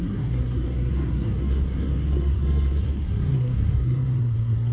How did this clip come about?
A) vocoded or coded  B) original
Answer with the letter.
A